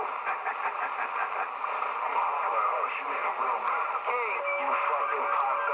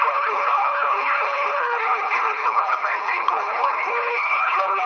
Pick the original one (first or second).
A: first